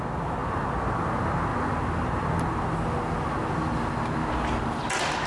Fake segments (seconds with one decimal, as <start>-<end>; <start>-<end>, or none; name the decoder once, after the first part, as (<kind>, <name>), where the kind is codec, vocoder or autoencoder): none